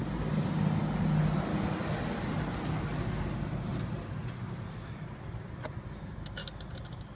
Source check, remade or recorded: recorded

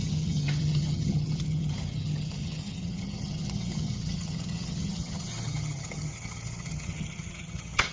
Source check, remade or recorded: remade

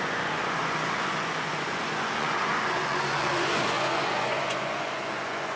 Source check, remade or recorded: remade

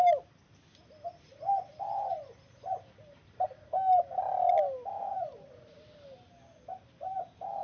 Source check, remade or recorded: recorded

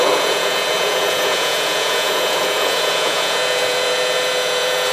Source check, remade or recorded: remade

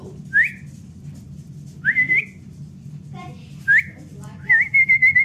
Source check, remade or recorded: recorded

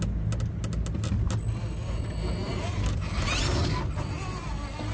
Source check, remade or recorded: recorded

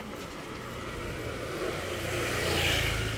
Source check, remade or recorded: recorded